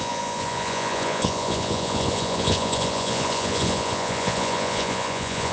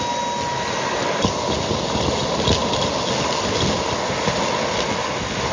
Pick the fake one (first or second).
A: first